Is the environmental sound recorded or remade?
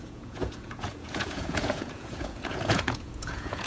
remade